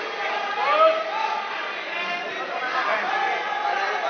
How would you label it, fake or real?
real